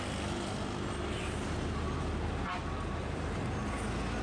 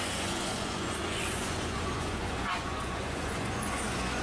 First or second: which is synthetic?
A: second